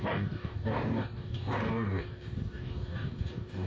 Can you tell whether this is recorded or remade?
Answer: remade